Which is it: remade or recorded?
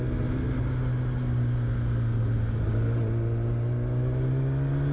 recorded